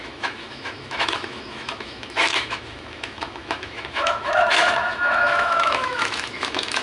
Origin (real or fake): fake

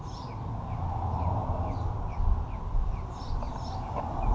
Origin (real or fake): real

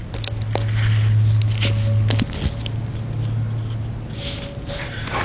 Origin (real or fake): real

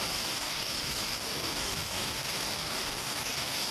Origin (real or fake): fake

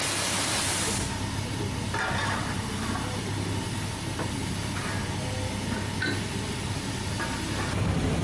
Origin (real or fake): real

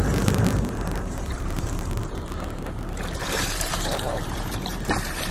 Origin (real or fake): fake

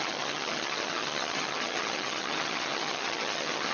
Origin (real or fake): fake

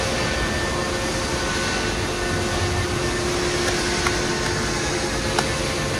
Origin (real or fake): real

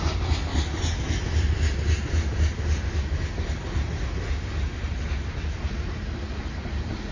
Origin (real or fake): real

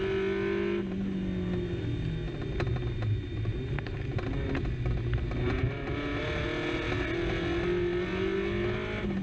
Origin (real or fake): real